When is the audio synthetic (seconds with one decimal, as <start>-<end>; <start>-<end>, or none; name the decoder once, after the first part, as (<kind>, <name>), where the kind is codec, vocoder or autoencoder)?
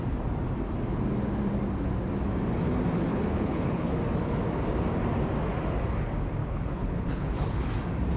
3.1-3.9 (codec, HILCodec); 6.4-7.7